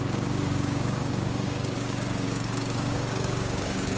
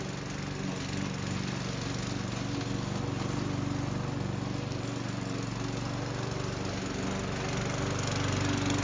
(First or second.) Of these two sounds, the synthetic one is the first